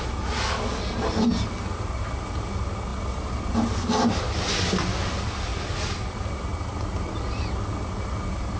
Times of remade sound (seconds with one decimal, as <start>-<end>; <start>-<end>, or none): none